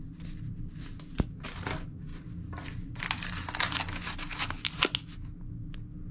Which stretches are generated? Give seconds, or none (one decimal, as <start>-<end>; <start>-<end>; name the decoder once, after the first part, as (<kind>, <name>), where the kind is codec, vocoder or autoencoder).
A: 2.1-3.0 (vocoder, BigVGAN v2)